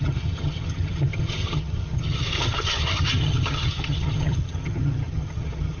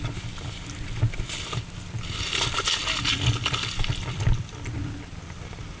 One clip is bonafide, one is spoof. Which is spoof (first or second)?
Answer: first